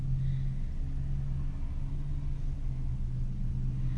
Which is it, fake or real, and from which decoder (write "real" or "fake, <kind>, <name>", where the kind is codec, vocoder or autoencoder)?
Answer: real